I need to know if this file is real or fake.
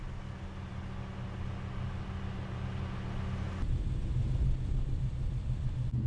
real